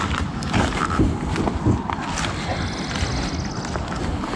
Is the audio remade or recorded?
recorded